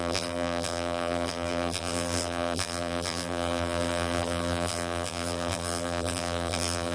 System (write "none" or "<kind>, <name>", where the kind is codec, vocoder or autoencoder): vocoder, BigVGAN v2